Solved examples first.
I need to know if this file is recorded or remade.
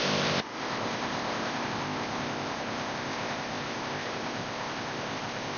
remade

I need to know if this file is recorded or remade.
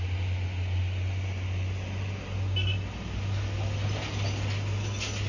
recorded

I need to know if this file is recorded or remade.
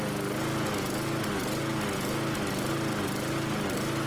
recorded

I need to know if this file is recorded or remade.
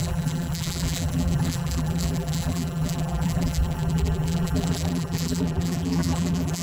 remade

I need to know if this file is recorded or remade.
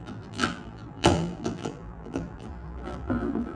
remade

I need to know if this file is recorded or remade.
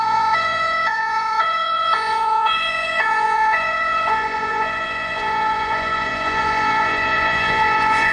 remade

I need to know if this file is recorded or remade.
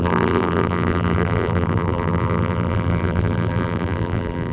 remade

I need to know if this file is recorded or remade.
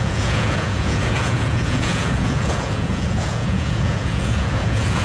remade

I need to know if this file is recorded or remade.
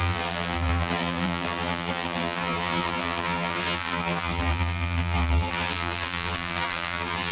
remade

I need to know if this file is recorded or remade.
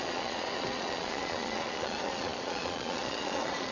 remade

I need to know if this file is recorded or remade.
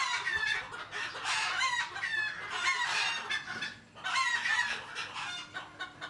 recorded